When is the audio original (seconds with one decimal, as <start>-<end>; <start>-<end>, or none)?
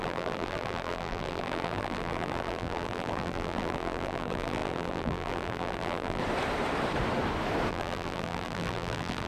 6.2-7.7